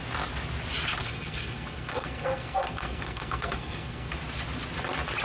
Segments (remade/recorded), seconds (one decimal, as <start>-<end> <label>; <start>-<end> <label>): 0.0-1.0 recorded; 1.0-4.1 remade; 4.1-5.2 recorded